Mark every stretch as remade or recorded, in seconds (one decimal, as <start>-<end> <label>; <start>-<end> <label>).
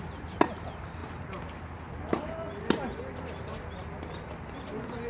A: 0.0-5.1 recorded